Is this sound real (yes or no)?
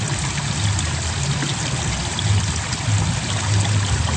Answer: yes